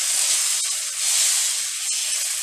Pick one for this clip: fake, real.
real